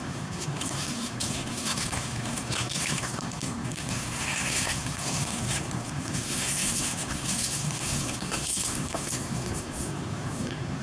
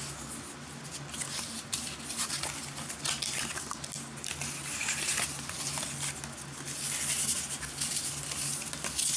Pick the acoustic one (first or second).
second